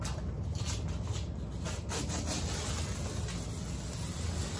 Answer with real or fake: real